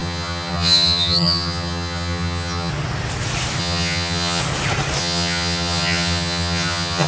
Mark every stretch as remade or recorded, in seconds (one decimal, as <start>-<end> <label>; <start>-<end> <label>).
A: 0.0-2.7 remade; 2.7-3.6 recorded; 3.6-4.4 remade; 4.4-5.0 recorded; 5.0-7.1 remade

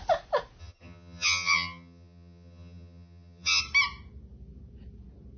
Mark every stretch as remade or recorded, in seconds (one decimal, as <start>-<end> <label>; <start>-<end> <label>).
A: 0.0-0.6 recorded; 0.6-3.6 remade; 3.6-5.4 recorded

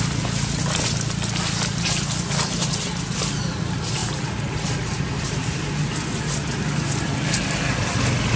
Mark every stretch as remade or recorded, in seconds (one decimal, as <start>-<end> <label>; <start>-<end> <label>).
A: 0.0-8.4 recorded